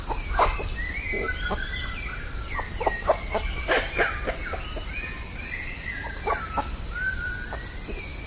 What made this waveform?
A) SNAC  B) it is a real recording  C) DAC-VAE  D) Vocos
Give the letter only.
B